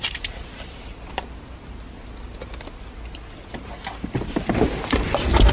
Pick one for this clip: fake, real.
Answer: real